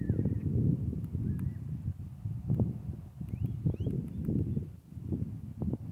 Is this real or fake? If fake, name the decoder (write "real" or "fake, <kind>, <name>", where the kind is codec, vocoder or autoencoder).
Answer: real